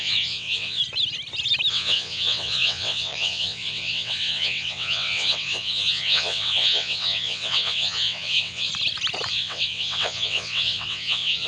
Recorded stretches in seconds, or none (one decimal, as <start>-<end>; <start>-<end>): 0.8-1.7; 8.7-9.3